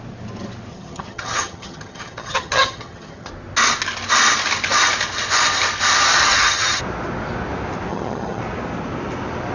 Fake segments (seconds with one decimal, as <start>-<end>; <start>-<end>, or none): 0.7-3.3; 6.2-6.8; 7.9-8.4